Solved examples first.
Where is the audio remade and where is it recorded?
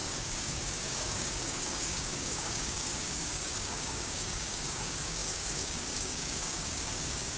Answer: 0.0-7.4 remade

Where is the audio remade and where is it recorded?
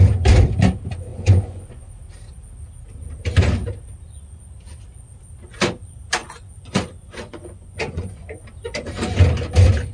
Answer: 0.0-1.1 recorded; 1.1-1.9 remade; 1.9-6.2 recorded; 6.2-8.4 remade; 8.4-9.9 recorded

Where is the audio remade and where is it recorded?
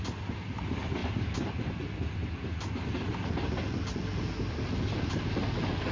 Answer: 0.0-5.9 recorded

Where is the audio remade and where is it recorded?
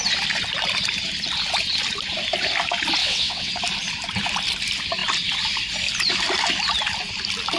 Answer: 0.0-3.0 recorded; 3.0-3.5 remade; 3.5-7.6 recorded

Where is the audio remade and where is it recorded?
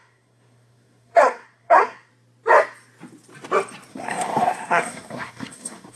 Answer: 0.0-2.1 remade; 2.1-3.9 recorded; 3.9-6.0 remade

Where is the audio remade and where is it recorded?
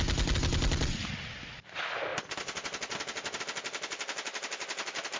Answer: 0.0-5.2 recorded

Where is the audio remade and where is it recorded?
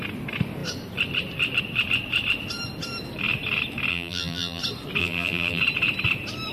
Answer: 0.0-3.9 recorded; 3.9-4.6 remade; 4.6-5.0 recorded; 5.0-5.6 remade; 5.6-6.5 recorded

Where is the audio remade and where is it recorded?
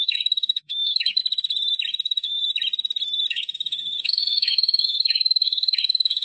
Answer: 0.0-1.2 remade; 1.2-1.9 recorded; 1.9-2.4 remade; 2.4-3.3 recorded; 3.3-6.2 remade